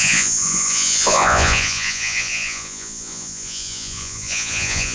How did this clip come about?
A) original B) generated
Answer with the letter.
B